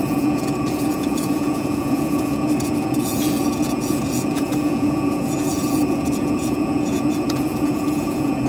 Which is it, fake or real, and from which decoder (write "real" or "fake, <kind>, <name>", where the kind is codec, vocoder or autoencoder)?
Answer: fake, vocoder, Vocos